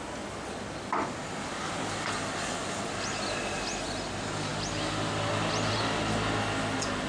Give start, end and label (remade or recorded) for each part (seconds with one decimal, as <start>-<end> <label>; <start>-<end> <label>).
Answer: 0.0-7.1 recorded

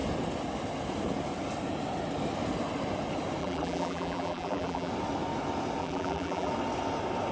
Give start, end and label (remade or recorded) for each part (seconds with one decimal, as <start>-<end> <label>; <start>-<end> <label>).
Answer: 0.0-3.4 recorded; 3.4-4.9 remade; 4.9-5.8 recorded; 5.8-6.5 remade; 6.5-7.3 recorded

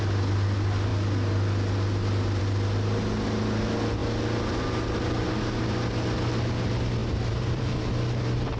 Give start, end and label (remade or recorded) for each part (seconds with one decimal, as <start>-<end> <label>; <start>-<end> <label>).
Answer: 0.0-7.0 recorded; 7.0-7.9 remade; 7.9-8.6 recorded